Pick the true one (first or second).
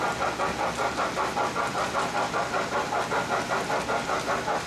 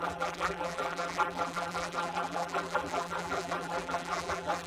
first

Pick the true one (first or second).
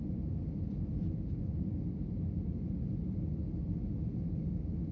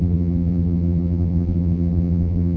first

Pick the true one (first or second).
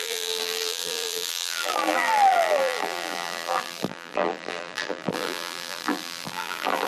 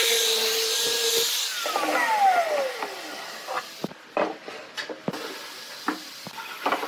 second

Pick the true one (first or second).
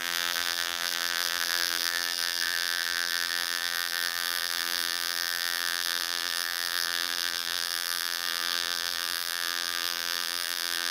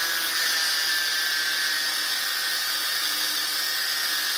second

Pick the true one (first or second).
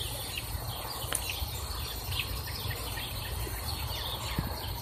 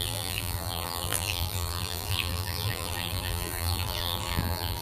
first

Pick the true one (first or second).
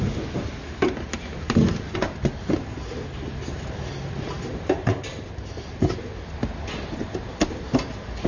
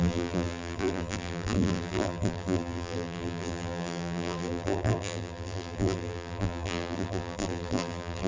first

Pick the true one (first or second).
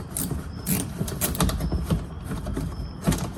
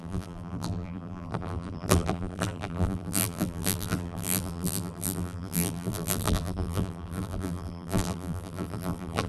first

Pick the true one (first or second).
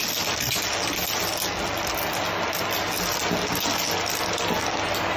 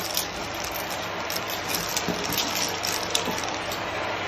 first